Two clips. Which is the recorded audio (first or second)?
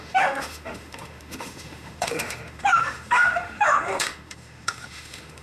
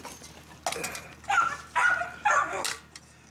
second